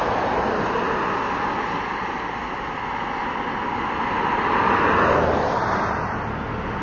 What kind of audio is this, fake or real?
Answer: real